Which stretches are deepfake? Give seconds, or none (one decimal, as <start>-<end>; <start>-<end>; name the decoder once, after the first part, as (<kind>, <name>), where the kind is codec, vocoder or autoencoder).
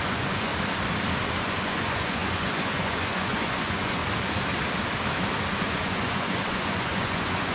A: 0.0-0.5 (vocoder, Vocos); 1.4-4.0; 5.5-7.5